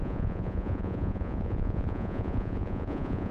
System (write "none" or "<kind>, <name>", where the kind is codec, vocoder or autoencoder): vocoder, Vocos